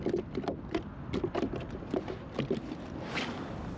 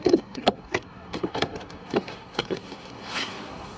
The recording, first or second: first